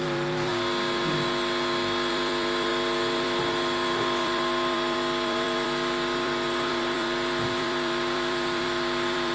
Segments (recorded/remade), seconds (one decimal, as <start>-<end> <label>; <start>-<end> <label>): 0.0-0.5 remade; 0.5-2.1 recorded; 2.1-9.3 remade